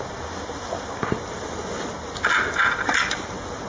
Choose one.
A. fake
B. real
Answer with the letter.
B